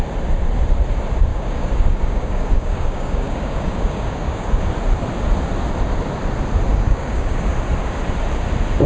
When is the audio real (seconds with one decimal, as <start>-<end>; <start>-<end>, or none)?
0.0-1.3; 4.6-6.7; 7.5-8.9